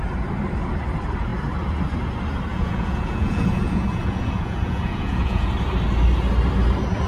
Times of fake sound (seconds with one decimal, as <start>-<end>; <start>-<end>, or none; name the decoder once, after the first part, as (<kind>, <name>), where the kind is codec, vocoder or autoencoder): 2.5-5.5 (vocoder, Vocos)